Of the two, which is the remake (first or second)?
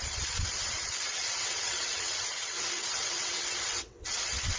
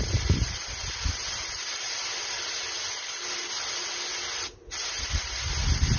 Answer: first